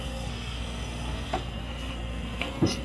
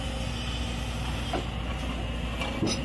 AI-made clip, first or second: first